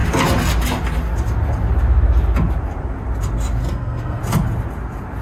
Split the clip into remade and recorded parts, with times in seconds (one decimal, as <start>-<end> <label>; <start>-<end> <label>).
0.0-3.6 recorded; 3.6-4.2 remade; 4.2-5.2 recorded